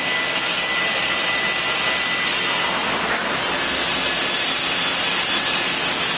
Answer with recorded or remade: recorded